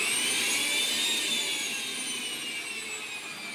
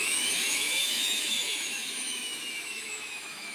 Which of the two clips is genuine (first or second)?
first